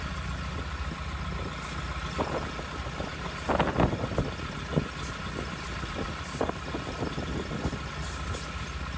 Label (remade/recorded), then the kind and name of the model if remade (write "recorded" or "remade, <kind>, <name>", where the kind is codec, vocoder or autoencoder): recorded